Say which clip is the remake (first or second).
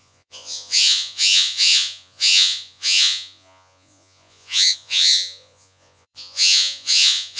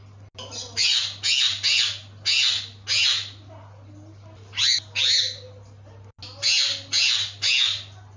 first